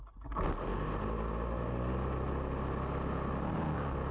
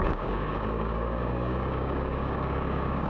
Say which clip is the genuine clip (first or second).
first